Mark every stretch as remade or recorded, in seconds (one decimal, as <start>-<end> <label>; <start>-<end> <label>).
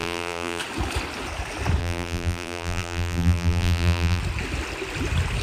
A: 0.0-0.6 remade; 0.6-1.8 recorded; 1.8-4.2 remade; 4.2-5.4 recorded